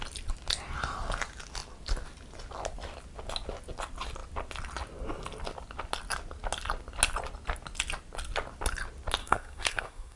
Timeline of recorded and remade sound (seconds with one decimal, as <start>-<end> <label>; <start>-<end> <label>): 0.0-9.2 recorded; 9.2-10.2 remade